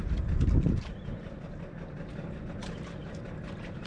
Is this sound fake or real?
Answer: real